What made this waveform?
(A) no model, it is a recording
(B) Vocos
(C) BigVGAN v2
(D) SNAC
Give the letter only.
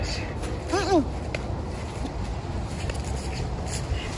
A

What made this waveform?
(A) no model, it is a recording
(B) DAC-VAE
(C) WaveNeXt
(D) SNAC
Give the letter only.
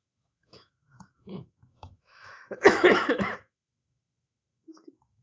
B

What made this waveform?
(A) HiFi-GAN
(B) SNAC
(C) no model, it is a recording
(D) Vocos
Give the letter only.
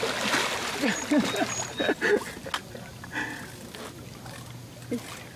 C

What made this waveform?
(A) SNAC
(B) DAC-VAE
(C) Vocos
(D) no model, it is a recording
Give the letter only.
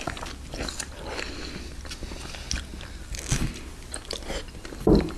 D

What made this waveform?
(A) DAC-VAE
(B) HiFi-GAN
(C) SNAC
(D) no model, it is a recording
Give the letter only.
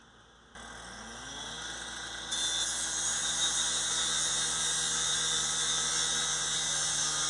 D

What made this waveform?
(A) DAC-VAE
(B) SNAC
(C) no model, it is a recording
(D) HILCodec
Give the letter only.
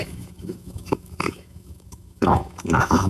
A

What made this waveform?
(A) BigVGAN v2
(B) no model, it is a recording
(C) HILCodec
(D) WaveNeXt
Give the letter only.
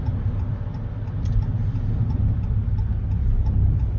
B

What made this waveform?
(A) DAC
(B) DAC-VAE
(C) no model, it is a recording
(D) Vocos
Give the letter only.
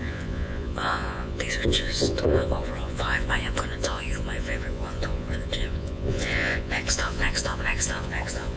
D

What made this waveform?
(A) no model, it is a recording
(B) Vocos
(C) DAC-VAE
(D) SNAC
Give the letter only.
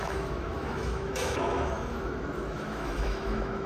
C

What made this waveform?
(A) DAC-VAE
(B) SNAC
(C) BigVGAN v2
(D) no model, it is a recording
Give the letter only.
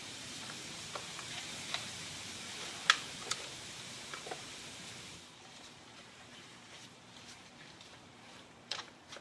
C